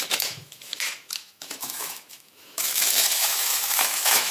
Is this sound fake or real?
fake